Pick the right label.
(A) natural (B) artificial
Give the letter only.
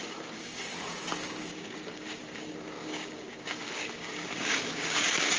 B